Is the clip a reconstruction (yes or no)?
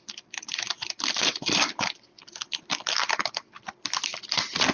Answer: yes